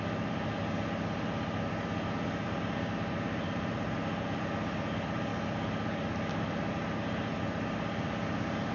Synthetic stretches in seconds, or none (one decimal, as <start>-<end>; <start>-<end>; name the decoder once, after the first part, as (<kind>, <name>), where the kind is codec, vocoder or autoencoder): none